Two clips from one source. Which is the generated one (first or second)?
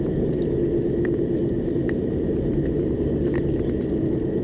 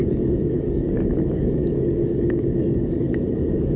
second